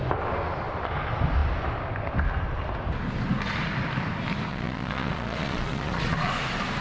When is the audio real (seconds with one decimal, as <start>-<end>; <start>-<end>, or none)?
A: 0.0-4.5; 6.3-6.8